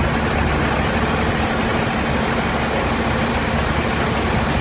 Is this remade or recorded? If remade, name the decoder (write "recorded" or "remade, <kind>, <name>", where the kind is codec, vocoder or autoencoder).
recorded